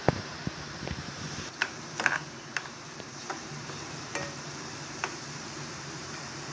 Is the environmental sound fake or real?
fake